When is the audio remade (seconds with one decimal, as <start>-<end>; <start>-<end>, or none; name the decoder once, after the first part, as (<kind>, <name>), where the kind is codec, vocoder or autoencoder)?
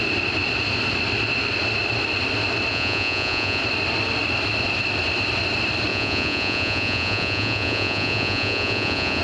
2.7-3.6 (vocoder, Vocos); 5.9-9.2